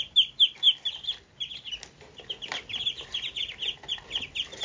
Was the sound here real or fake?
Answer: real